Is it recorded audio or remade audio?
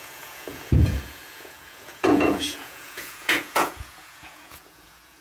remade